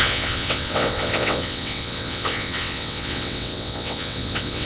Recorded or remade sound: remade